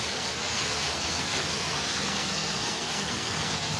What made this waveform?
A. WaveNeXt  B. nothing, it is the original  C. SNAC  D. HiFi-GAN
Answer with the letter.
C